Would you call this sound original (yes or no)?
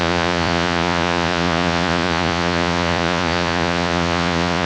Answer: no